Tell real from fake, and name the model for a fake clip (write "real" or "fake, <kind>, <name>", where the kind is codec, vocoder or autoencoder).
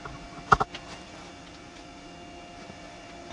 real